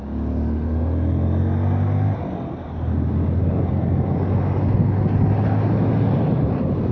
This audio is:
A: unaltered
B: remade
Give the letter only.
A